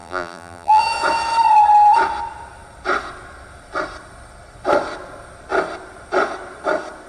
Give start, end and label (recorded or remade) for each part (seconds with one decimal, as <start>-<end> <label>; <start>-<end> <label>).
0.0-0.8 remade; 0.8-7.1 recorded